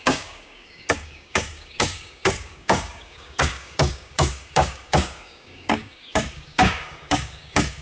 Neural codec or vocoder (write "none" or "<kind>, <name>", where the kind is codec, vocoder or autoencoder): codec, DAC